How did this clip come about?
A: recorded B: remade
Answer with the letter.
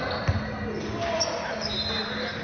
A